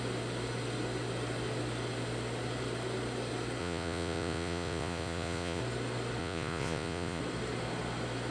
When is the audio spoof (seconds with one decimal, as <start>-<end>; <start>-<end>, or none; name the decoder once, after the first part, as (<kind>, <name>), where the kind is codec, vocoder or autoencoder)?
3.6-5.6 (vocoder, Vocos); 6.2-7.2